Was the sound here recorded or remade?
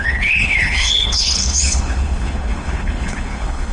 remade